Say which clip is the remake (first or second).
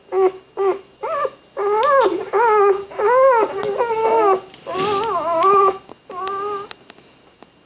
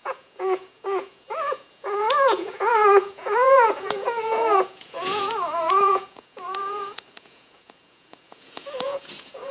second